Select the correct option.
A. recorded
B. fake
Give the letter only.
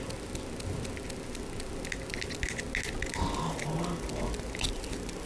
A